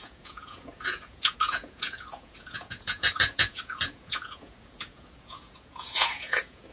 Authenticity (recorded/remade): remade